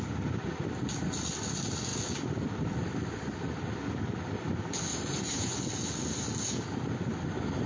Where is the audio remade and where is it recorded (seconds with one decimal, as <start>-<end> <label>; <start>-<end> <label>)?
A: 0.0-4.9 recorded; 4.9-5.6 remade; 5.6-7.7 recorded